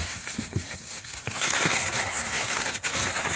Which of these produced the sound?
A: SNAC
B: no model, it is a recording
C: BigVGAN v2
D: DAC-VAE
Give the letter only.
A